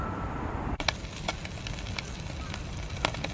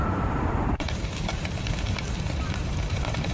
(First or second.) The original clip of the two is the first